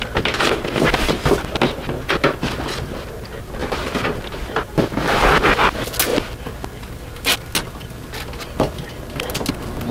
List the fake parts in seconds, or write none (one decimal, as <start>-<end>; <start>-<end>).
none